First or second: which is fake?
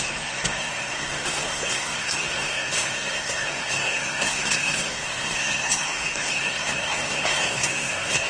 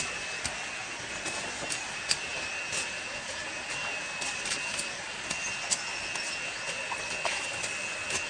first